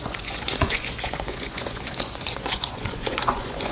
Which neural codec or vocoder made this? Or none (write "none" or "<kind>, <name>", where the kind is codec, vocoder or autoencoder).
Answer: vocoder, Vocos